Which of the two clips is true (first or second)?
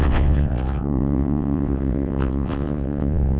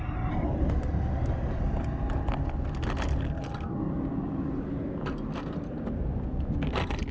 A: second